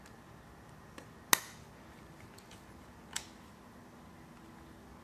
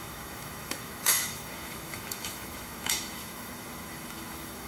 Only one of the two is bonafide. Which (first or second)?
first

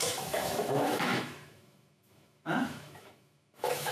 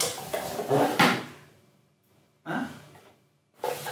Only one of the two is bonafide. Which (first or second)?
second